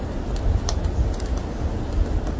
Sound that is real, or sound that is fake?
real